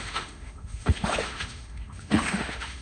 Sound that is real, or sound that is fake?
fake